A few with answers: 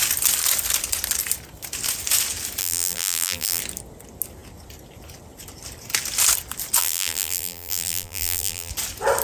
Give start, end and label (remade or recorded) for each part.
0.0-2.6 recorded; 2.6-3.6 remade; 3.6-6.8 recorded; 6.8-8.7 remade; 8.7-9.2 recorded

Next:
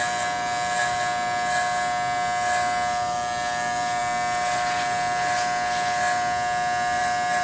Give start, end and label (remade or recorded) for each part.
0.0-7.4 recorded